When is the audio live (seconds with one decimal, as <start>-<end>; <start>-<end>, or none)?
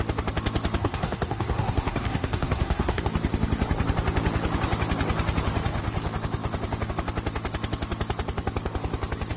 0.0-0.8; 3.0-9.4